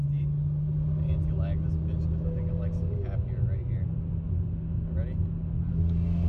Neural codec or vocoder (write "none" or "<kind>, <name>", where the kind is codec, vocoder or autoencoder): none